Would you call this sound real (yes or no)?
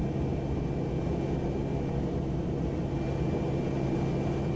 yes